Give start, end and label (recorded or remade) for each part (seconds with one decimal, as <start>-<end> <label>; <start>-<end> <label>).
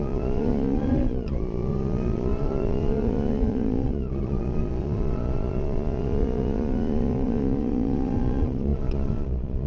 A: 0.0-9.7 remade